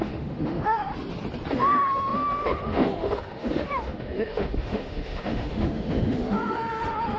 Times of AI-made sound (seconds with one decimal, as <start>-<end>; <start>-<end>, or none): 0.0-0.9; 1.5-7.2